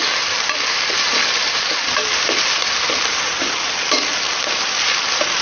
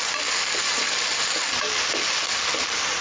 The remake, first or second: first